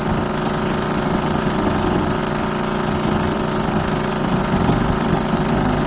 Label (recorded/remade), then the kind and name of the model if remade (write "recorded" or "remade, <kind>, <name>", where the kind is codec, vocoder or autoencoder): recorded